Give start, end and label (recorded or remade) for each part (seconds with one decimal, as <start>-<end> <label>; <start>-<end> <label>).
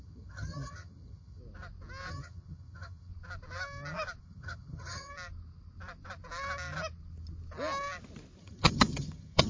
0.0-1.4 remade; 1.4-2.1 recorded; 2.1-3.1 remade; 3.1-4.2 recorded; 4.2-5.1 remade; 5.1-8.4 recorded; 8.4-9.5 remade